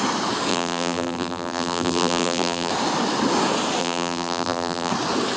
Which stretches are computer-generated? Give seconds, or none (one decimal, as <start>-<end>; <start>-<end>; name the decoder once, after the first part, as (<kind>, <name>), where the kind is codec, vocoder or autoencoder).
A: 0.5-2.7 (vocoder, BigVGAN v2); 3.8-4.9